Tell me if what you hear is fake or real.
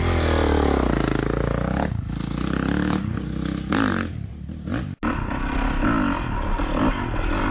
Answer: real